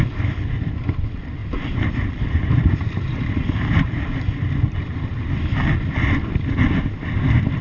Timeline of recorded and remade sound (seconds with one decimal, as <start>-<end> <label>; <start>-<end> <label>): 0.0-1.4 recorded; 1.4-4.5 remade; 4.5-7.6 recorded